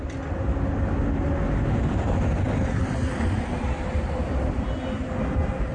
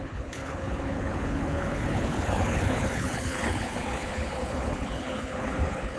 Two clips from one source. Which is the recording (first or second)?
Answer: first